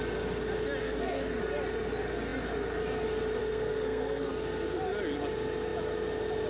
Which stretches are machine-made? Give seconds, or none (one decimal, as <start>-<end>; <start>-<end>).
0.8-1.4; 3.4-4.3